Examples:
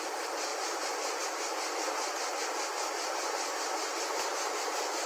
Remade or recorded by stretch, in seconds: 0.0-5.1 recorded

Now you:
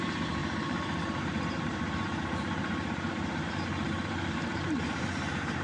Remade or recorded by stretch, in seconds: 0.0-5.6 remade

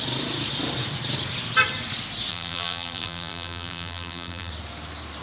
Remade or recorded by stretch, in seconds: 0.0-2.3 recorded; 2.3-4.5 remade; 4.5-5.2 recorded

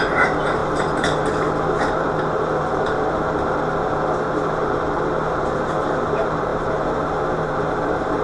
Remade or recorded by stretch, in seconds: 0.0-8.2 remade

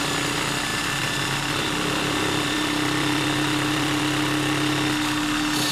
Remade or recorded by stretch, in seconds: 0.0-0.7 recorded; 0.7-4.0 remade; 4.0-5.7 recorded